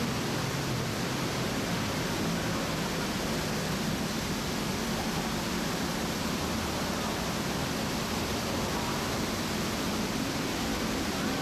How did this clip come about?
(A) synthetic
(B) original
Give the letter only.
A